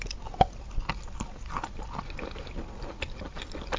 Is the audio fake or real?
real